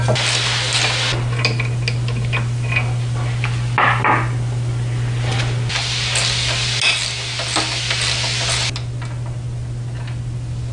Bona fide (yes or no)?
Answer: yes